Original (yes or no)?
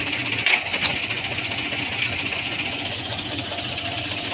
no